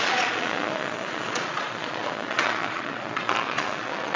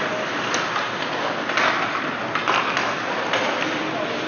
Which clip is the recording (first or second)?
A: second